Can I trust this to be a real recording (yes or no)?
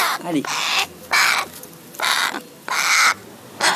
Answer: yes